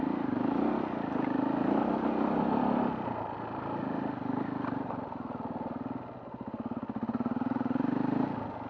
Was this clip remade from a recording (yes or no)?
no